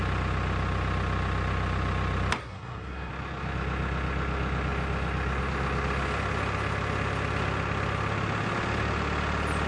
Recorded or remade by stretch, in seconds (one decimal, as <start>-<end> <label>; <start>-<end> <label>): 0.0-2.4 recorded; 2.4-3.1 remade; 3.1-9.7 recorded